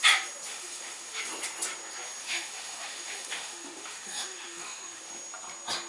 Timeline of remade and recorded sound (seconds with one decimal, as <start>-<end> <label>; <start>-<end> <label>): 0.0-0.5 recorded; 0.5-1.2 remade; 1.2-2.2 recorded; 2.2-5.1 remade; 5.1-5.9 recorded